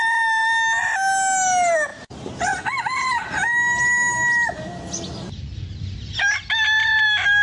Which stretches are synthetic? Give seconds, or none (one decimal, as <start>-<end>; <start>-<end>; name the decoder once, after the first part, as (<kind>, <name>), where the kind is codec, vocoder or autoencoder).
none

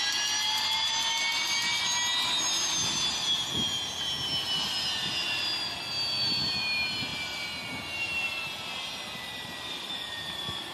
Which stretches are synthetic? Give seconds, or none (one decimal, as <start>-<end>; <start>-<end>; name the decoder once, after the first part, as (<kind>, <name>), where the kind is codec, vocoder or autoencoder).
none

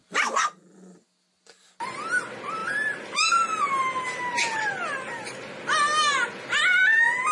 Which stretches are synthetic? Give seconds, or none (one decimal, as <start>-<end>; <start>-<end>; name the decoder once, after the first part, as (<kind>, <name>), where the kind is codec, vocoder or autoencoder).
none